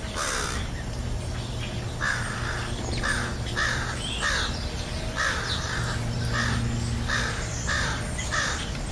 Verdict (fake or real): real